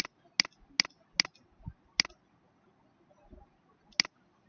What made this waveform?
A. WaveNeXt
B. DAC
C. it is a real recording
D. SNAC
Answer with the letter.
C